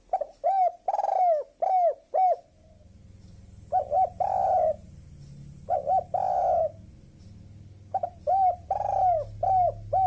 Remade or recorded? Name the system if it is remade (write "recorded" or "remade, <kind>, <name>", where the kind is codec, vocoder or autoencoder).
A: recorded